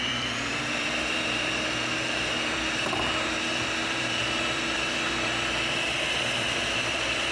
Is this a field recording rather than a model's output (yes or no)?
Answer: no